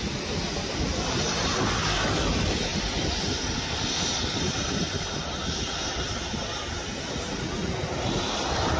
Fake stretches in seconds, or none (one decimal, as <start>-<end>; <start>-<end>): 2.7-6.1

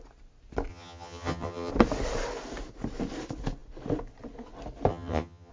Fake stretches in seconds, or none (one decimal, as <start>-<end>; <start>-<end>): 0.7-1.7; 4.9-5.5